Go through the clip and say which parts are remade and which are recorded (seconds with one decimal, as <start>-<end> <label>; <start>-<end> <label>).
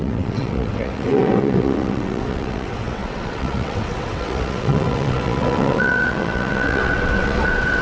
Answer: 0.0-7.8 remade